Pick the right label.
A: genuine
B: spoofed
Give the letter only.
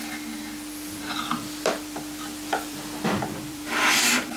B